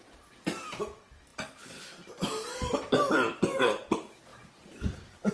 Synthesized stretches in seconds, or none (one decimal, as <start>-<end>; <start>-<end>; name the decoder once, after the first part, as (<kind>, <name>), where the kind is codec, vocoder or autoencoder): 4.3-5.3 (vocoder, BigVGAN v2)